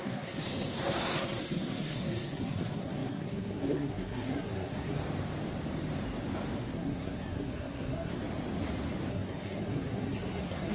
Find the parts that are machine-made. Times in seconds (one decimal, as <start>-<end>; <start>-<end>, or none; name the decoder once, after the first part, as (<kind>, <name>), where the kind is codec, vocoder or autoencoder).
0.0-5.0 (codec, SNAC); 6.6-8.2; 9.1-10.7